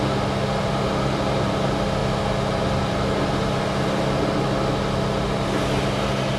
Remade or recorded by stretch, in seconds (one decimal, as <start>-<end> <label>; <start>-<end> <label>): 0.0-6.4 recorded